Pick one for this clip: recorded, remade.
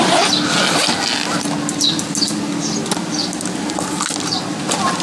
recorded